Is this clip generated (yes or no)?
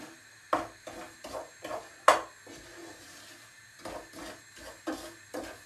no